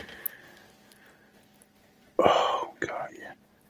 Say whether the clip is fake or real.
real